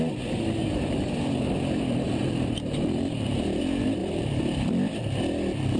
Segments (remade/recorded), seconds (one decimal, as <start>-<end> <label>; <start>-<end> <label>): 0.0-0.6 recorded; 0.6-3.6 remade; 3.6-4.0 recorded; 4.0-4.7 remade; 4.7-5.8 recorded